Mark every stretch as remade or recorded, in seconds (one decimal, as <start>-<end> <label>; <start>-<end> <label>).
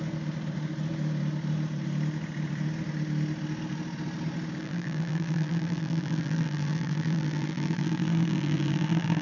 0.0-4.6 recorded; 4.6-9.2 remade